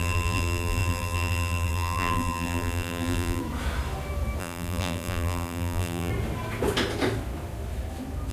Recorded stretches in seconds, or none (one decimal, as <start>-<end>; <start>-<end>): 3.4-4.4; 6.1-8.3